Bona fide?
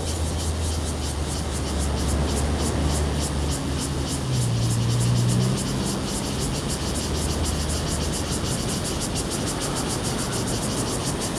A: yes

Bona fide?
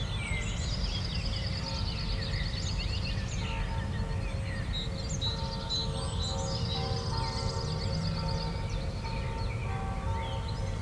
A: yes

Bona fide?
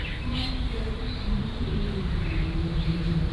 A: no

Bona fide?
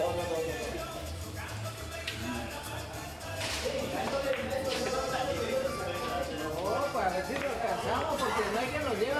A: no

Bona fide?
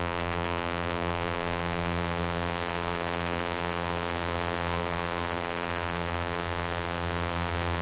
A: no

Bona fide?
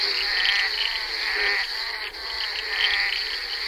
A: yes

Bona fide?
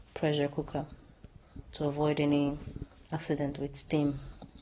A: yes